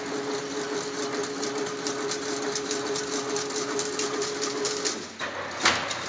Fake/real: real